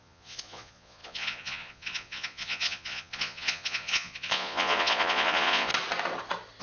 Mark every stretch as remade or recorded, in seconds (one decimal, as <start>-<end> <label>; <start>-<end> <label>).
0.0-5.7 remade; 5.7-6.6 recorded